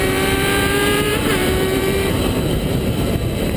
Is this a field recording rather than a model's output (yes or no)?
no